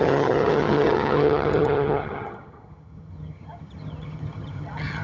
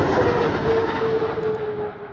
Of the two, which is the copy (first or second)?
first